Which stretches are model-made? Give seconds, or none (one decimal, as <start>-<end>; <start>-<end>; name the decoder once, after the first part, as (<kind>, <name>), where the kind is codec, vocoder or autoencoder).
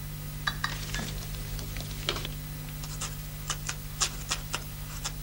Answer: none